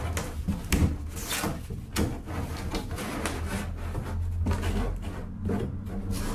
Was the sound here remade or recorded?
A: recorded